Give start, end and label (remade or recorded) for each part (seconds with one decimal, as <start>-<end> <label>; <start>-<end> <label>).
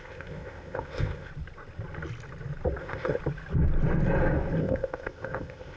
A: 0.0-1.3 remade; 1.3-2.8 recorded; 2.8-3.2 remade; 3.2-4.6 recorded; 4.6-5.8 remade